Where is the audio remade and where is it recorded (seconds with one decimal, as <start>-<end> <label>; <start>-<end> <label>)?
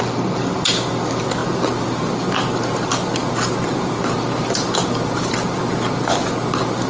0.0-6.9 recorded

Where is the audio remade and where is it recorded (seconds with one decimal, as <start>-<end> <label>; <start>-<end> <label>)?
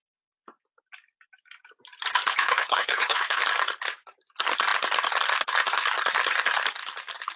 0.0-2.3 recorded; 2.3-3.4 remade; 3.4-7.4 recorded